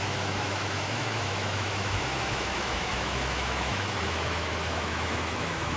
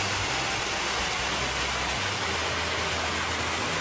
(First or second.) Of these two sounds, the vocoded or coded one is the first